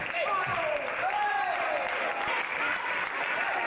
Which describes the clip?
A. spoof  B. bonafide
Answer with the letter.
B